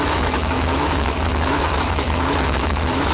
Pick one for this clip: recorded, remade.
remade